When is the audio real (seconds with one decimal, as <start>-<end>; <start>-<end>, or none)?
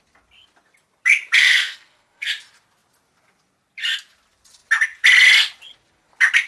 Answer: 0.0-1.4; 2.3-6.5